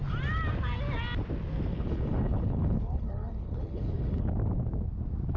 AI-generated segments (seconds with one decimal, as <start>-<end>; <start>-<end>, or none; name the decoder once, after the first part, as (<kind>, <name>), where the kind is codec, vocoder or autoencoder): 1.7-4.2 (codec, HILCodec)

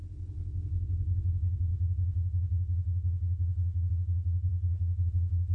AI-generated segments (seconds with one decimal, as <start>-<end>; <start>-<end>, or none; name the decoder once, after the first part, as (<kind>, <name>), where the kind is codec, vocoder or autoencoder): 0.0-5.5 (codec, HILCodec)

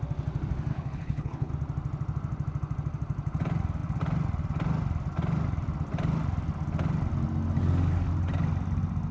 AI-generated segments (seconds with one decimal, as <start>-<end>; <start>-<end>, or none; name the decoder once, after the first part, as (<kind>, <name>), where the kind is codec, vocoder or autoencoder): 0.7-1.5 (codec, HILCodec)

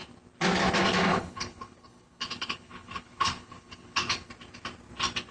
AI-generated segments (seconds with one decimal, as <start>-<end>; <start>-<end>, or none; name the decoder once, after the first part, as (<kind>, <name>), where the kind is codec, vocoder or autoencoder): 1.1-4.3 (codec, HILCodec)